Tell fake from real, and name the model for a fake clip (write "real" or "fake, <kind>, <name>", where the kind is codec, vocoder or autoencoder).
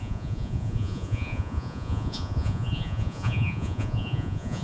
fake, vocoder, Vocos